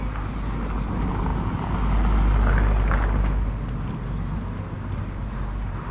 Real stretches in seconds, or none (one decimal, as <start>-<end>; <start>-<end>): 0.0-5.9